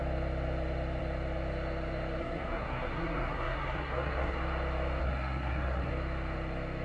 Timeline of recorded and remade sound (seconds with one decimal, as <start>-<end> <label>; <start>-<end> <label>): 0.0-2.2 recorded; 2.2-4.4 remade; 4.4-5.0 recorded; 5.0-5.9 remade; 5.9-6.8 recorded